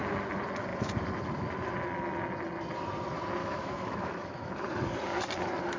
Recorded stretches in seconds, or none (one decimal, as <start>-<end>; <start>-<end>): 0.0-3.4; 4.5-5.8